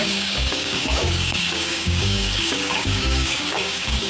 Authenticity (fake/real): fake